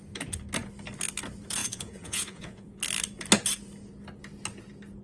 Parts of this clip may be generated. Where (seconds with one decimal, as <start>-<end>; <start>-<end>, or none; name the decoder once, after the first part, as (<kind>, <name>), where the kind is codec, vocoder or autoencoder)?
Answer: 1.6-2.8 (vocoder, Vocos)